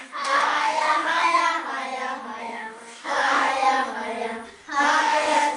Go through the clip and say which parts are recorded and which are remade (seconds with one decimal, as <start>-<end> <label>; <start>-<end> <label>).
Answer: 0.0-1.4 remade; 1.4-2.4 recorded; 2.4-3.5 remade; 3.5-5.0 recorded; 5.0-5.6 remade